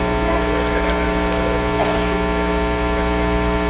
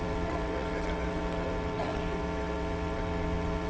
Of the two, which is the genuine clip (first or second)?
first